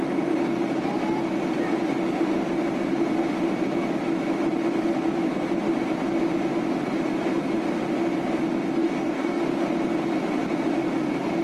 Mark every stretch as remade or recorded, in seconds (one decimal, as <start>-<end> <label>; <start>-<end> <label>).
0.0-8.8 recorded; 8.8-9.4 remade; 9.4-11.4 recorded